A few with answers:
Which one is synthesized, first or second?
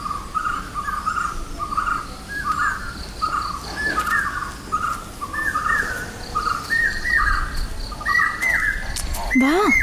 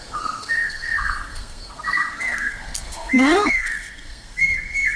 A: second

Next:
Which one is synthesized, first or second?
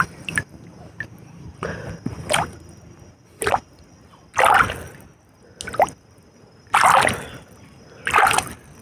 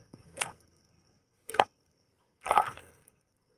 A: second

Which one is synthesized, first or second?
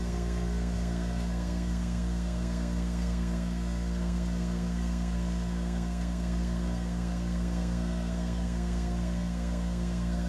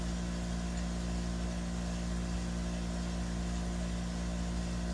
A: first